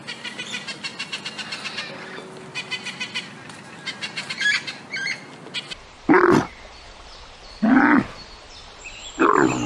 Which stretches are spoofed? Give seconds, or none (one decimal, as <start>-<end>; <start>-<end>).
none

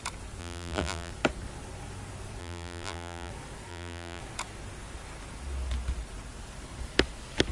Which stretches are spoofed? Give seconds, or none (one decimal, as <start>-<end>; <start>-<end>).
0.4-1.1; 2.4-3.3; 3.7-4.2

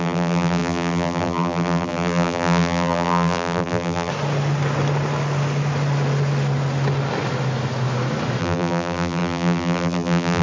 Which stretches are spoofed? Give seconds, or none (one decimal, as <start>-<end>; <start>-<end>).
0.0-4.1; 8.4-10.4

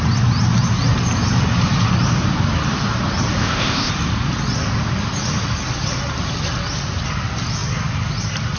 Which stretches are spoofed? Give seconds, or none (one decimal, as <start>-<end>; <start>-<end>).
3.4-3.9

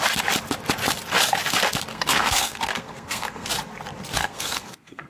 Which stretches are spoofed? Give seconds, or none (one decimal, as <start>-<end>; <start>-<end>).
1.9-3.5; 4.2-5.1

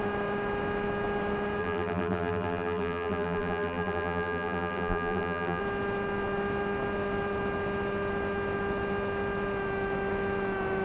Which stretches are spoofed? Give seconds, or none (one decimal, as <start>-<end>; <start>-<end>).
1.6-5.6

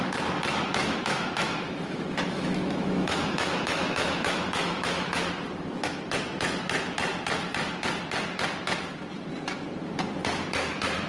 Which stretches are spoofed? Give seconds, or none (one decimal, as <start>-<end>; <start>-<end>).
0.8-5.3